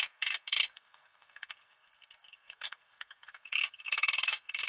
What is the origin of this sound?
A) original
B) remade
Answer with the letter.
B